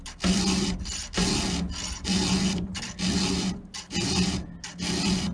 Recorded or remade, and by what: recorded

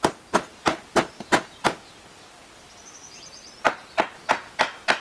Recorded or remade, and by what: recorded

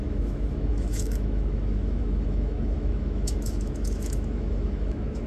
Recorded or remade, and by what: remade, autoencoder, DAC-VAE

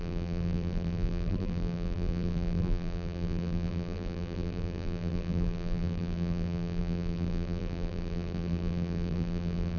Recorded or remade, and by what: remade, vocoder, BigVGAN v2